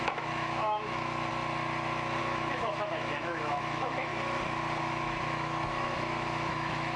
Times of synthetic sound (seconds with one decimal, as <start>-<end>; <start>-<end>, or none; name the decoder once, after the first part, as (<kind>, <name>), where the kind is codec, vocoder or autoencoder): 0.0-1.3 (autoencoder, DAC-VAE); 2.2-4.1; 4.8-7.0